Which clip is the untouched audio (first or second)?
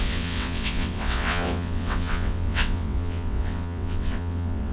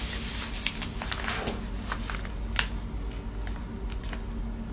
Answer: second